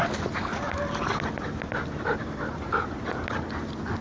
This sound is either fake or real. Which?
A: real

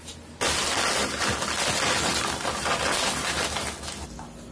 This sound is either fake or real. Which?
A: real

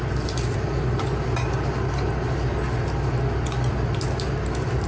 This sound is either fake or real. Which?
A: real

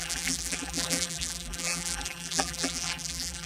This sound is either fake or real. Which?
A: fake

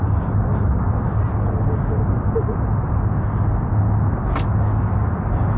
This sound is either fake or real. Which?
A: real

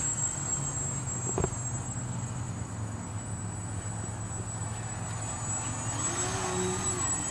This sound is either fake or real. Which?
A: real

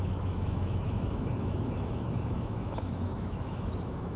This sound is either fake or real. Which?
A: fake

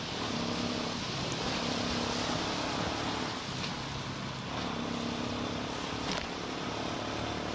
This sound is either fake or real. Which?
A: real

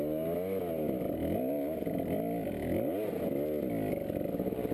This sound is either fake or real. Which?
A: real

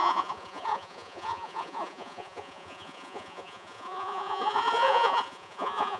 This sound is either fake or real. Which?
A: fake